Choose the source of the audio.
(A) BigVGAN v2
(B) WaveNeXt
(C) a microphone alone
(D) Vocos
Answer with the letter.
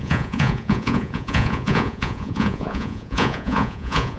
D